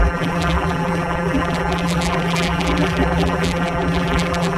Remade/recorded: remade